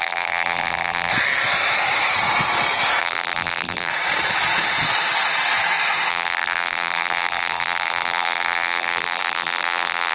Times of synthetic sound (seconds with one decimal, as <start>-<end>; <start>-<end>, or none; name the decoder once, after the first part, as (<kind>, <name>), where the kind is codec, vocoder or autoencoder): 0.0-1.1 (vocoder, BigVGAN v2); 3.0-3.9; 6.1-10.1